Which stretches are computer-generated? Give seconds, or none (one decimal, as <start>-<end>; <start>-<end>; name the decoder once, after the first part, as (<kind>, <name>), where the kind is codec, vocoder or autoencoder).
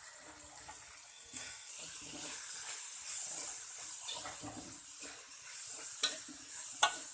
1.1-1.7 (codec, SNAC)